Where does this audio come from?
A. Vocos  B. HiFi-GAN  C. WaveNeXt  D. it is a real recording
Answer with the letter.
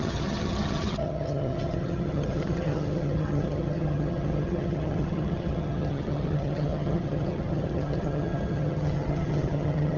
B